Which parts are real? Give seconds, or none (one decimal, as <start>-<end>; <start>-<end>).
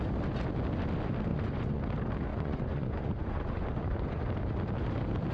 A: 0.0-1.3; 1.8-2.3; 4.2-5.3